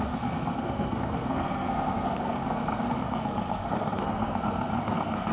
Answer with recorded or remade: remade